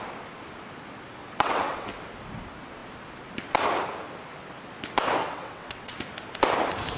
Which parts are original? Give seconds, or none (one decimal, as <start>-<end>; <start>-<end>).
0.0-1.2; 1.9-5.2; 6.0-7.0